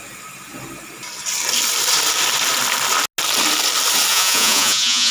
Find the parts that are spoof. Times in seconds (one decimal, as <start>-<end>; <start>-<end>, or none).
4.1-5.1